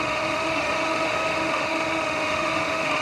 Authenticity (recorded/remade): remade